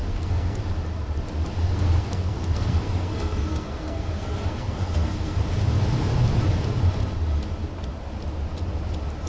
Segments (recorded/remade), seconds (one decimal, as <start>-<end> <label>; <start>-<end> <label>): 0.0-0.6 remade; 0.6-1.6 recorded; 1.6-5.4 remade; 5.4-9.3 recorded